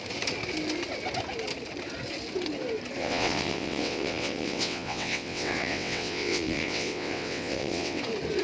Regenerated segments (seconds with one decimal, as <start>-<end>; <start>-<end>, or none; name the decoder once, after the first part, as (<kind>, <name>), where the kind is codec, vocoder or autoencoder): 3.0-8.0 (vocoder, WaveNeXt)